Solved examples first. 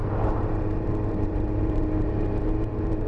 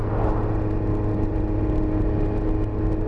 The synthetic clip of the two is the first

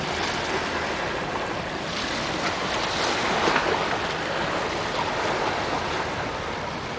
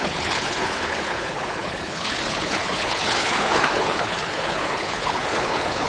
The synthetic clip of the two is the second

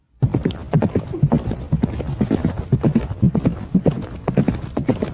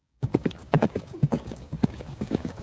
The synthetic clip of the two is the second